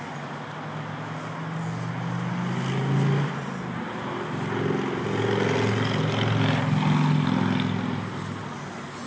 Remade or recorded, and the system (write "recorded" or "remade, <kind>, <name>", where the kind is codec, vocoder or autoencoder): recorded